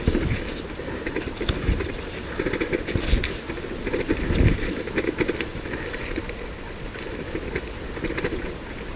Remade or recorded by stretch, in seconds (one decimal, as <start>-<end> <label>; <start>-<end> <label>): 0.0-9.0 recorded